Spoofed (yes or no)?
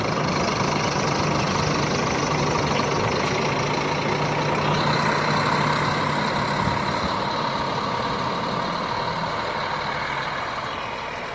no